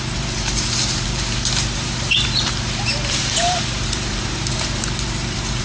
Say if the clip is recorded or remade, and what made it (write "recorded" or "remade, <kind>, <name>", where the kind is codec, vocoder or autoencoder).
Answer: remade, vocoder, BigVGAN v2